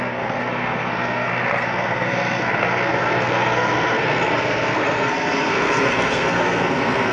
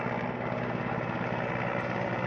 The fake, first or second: first